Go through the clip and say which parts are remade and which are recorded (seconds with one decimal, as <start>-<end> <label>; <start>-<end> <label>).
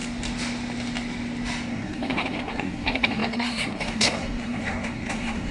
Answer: 0.0-1.7 recorded; 1.7-5.5 remade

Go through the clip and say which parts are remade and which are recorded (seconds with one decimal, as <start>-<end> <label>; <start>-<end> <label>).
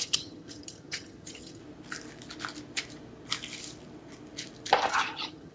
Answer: 0.0-1.6 remade; 1.6-4.9 recorded; 4.9-5.5 remade